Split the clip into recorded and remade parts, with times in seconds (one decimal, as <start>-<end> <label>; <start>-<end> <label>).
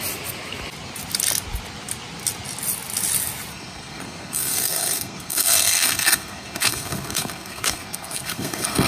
0.0-3.5 recorded; 3.5-8.9 remade